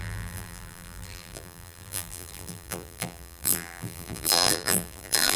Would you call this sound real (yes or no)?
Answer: no